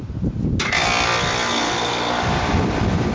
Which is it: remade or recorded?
recorded